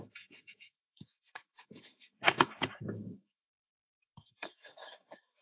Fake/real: fake